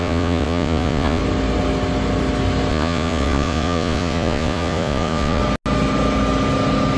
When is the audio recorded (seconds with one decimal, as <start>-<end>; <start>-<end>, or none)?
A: 1.2-2.7; 5.4-7.0